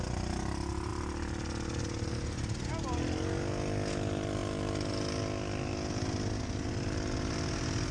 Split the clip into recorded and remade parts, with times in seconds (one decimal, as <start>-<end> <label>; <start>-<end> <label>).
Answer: 0.0-7.9 recorded

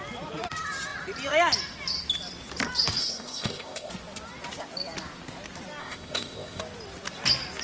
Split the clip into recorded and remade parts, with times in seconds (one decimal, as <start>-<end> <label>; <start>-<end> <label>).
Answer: 0.0-3.0 recorded; 3.0-3.9 remade; 3.9-5.8 recorded; 5.8-6.6 remade; 6.6-7.6 recorded